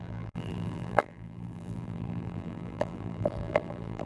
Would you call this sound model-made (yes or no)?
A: yes